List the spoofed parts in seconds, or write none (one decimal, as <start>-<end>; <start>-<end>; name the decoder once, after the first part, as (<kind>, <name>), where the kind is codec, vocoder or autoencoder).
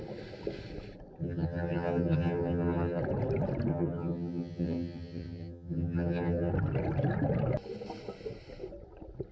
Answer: 1.2-3.0 (vocoder, HiFi-GAN); 3.7-6.5